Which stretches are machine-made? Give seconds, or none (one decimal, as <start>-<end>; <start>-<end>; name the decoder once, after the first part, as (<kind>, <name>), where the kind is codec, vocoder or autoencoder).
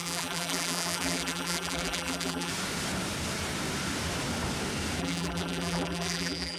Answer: 0.0-2.5 (vocoder, BigVGAN v2); 5.0-6.6